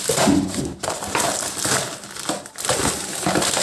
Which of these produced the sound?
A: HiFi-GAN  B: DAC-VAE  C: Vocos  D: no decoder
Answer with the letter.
D